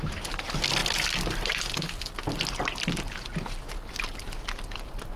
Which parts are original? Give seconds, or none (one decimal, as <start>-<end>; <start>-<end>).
0.0-5.2